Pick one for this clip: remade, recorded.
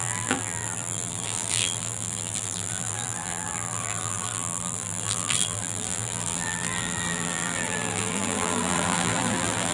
remade